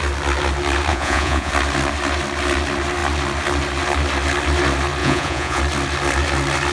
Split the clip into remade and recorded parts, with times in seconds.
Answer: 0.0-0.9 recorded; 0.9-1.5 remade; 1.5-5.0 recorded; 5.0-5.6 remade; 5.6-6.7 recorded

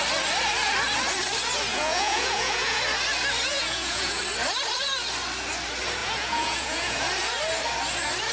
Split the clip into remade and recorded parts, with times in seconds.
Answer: 0.0-1.7 recorded; 1.7-2.8 remade; 2.8-3.5 recorded; 3.5-4.2 remade; 4.2-6.0 recorded; 6.0-7.0 remade; 7.0-8.3 recorded

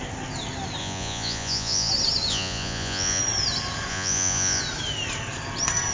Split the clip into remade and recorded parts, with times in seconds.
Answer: 0.0-0.8 recorded; 0.8-1.9 remade; 1.9-2.3 recorded; 2.3-3.2 remade; 3.2-3.9 recorded; 3.9-4.6 remade; 4.6-5.9 recorded

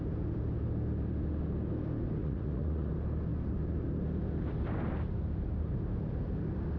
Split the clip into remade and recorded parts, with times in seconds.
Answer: 0.0-2.2 recorded; 2.2-2.9 remade; 2.9-6.8 recorded

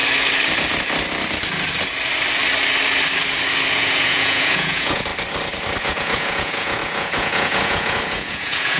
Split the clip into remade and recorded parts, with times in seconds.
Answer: 0.0-3.7 recorded; 3.7-5.1 remade; 5.1-5.8 recorded; 5.8-8.8 remade

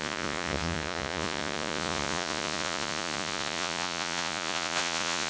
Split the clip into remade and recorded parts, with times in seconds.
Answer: 0.0-5.3 remade

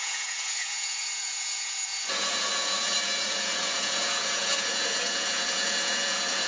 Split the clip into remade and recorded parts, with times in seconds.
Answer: 0.0-6.5 remade